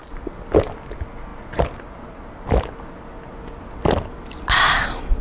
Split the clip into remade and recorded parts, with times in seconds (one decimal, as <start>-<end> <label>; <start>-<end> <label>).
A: 0.0-5.2 recorded